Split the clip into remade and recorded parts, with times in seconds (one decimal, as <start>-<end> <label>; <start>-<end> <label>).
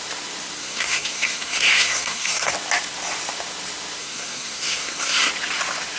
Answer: 0.0-0.6 recorded; 0.6-2.5 remade; 2.5-4.0 recorded; 4.0-5.3 remade; 5.3-6.0 recorded